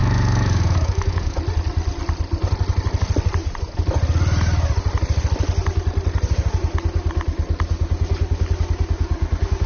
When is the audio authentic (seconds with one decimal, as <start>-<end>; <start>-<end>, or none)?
1.4-9.7